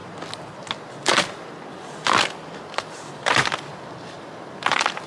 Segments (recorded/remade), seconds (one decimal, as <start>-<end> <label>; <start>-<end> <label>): 0.0-3.1 recorded; 3.1-5.1 remade